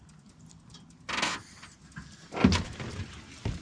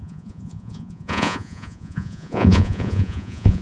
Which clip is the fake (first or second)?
second